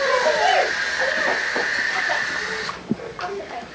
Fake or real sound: real